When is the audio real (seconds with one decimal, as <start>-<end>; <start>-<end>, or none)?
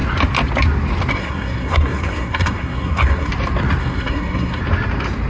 0.0-1.1; 3.3-3.8; 4.6-5.3